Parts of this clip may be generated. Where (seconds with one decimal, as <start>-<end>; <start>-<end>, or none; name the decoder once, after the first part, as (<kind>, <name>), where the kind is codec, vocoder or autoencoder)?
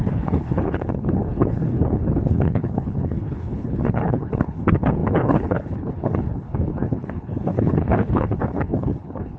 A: 0.0-9.4 (codec, HILCodec)